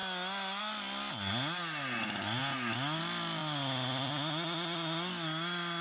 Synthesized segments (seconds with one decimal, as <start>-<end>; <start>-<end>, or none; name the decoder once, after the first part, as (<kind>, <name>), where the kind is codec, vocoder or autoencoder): none